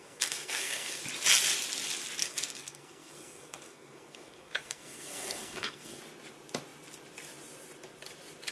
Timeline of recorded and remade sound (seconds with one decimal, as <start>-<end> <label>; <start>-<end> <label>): 0.0-1.0 remade; 1.0-2.2 recorded; 2.2-6.0 remade; 6.0-8.5 recorded